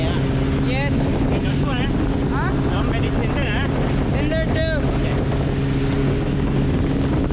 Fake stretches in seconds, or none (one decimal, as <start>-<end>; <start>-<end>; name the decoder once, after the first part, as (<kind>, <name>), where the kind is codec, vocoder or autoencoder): 6.0-6.6 (codec, DAC)